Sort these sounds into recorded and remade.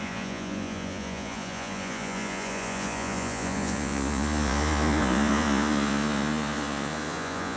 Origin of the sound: remade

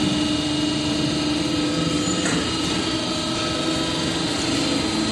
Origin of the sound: recorded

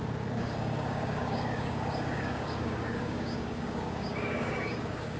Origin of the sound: remade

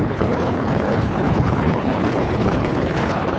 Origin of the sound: remade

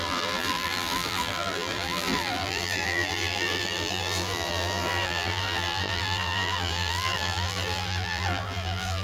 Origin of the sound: remade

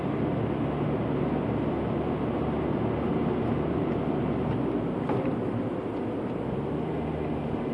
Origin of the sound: recorded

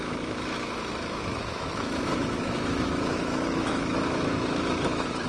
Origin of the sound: remade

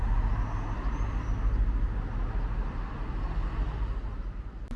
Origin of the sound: recorded